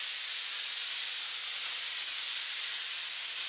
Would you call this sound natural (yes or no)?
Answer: yes